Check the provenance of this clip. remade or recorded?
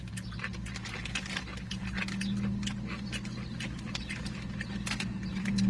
recorded